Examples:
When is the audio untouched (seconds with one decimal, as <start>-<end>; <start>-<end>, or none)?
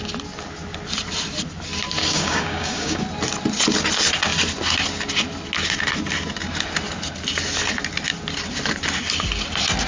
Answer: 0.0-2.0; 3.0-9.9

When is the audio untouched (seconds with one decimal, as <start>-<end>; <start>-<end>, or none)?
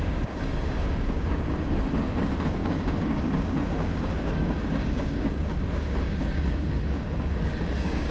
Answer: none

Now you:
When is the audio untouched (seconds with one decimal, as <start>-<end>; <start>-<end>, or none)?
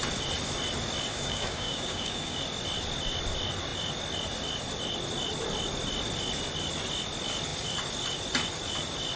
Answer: 0.0-1.1; 2.4-9.2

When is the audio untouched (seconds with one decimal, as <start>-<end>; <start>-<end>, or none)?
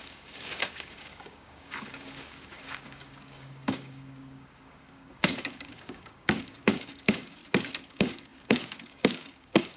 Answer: 7.4-7.9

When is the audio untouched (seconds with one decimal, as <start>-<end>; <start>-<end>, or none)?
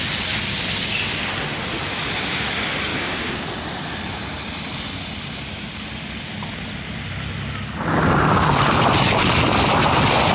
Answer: 0.0-2.9; 3.4-10.3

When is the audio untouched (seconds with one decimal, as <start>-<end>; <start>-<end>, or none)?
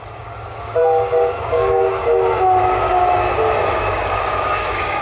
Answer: 0.8-1.3; 2.0-2.6; 3.0-3.7